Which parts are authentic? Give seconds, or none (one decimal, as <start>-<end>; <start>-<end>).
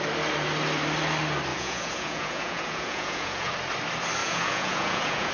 0.0-1.5; 3.5-4.2